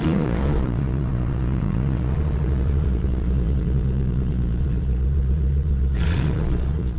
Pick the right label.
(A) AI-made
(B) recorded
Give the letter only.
A